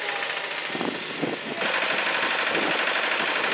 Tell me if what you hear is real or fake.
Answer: real